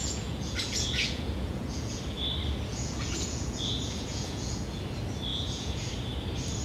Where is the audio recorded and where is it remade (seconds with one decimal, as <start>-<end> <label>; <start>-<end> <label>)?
0.0-2.0 remade; 2.0-2.7 recorded; 2.7-4.8 remade; 4.8-5.3 recorded; 5.3-5.9 remade; 5.9-6.6 recorded